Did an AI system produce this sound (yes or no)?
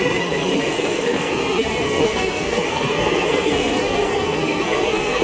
yes